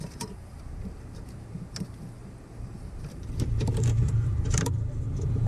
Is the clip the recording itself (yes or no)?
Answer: no